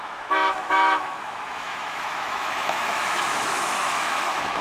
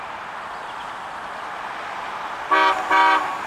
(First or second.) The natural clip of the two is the second